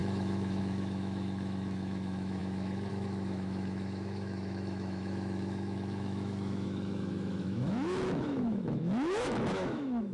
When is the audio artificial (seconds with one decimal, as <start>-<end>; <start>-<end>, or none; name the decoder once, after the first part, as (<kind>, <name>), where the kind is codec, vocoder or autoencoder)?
0.0-10.1 (autoencoder, DAC-VAE)